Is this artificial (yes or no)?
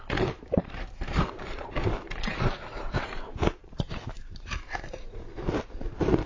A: yes